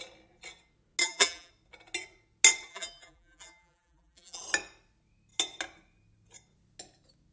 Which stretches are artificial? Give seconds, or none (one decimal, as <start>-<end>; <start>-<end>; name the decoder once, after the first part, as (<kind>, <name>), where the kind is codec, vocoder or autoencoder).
1.0-1.5 (vocoder, BigVGAN v2); 2.7-4.4